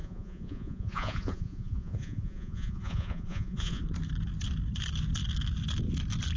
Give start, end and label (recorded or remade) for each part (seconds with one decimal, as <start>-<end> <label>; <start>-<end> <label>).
0.0-3.8 remade; 3.8-6.4 recorded